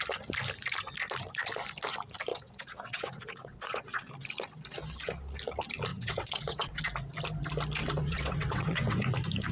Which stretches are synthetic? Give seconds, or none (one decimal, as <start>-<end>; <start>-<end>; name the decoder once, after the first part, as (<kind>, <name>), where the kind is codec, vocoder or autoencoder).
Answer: 2.3-4.1 (vocoder, WaveNeXt); 5.9-6.8; 7.8-9.0

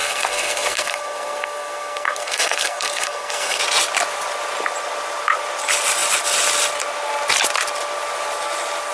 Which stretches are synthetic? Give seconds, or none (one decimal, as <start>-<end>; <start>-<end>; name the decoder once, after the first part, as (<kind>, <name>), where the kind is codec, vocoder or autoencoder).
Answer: 0.0-3.6 (codec, SNAC)

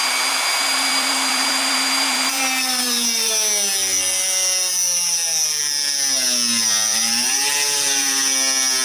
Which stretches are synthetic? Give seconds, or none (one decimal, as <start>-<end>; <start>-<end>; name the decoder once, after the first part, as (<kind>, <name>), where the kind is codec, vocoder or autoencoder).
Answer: 0.0-3.3 (vocoder, BigVGAN v2); 6.9-8.2

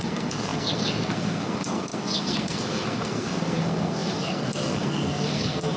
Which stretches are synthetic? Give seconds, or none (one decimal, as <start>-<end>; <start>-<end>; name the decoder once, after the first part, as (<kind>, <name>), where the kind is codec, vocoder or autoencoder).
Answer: 0.0-5.8 (codec, SNAC)

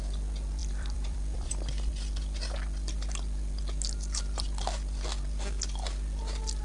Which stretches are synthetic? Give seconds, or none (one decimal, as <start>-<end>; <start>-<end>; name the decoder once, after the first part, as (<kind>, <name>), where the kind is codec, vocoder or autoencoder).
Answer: 0.6-1.9 (vocoder, BigVGAN v2)